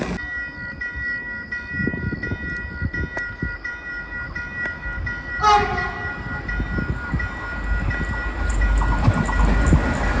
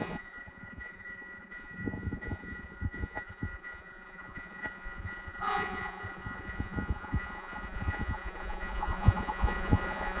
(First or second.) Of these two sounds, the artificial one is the second